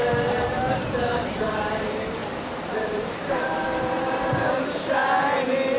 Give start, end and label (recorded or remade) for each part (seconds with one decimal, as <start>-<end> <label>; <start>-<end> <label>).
0.0-5.0 remade; 5.0-5.8 recorded